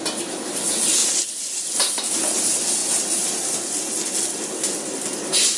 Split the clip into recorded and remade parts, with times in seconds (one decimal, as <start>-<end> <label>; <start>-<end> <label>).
0.0-5.6 recorded